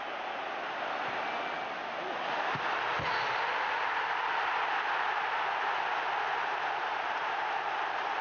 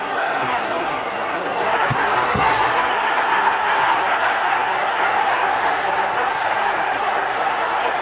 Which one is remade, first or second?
second